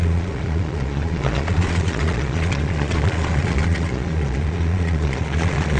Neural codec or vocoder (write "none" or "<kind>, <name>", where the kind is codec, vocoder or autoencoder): vocoder, Vocos